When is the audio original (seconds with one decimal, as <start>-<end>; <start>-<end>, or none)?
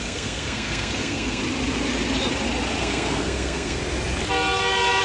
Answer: 1.4-2.8; 3.8-5.0